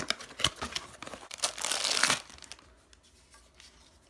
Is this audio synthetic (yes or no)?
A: no